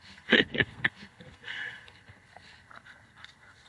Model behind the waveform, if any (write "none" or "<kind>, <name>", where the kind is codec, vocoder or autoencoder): codec, SNAC